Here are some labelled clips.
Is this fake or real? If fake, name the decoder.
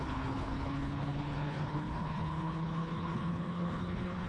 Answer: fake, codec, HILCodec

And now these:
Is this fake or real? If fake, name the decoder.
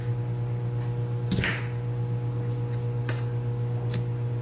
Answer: real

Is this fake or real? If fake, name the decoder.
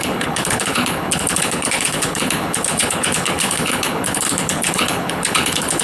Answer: fake, codec, HILCodec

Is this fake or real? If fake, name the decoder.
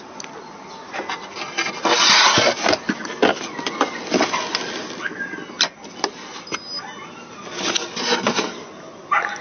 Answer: real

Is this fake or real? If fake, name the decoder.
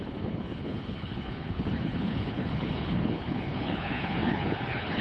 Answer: fake, codec, HILCodec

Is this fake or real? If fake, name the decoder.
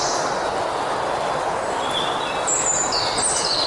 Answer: real